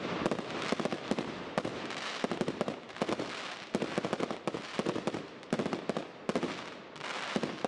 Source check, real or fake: real